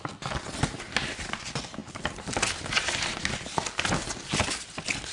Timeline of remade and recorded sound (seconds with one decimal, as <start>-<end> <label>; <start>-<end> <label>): 0.0-5.1 recorded